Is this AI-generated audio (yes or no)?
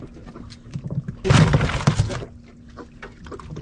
no